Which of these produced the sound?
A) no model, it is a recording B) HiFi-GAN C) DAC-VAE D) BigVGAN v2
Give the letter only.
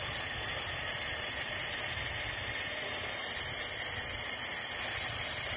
A